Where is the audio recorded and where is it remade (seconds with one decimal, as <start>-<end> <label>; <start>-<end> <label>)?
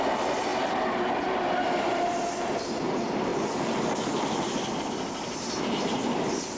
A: 0.0-6.6 recorded